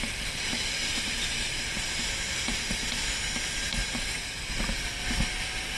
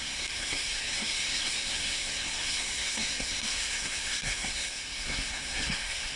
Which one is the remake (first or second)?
second